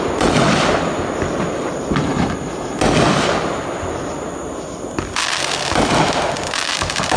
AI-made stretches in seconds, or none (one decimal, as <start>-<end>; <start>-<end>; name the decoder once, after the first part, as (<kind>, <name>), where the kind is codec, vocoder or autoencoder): none